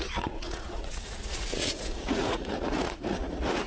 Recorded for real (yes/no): no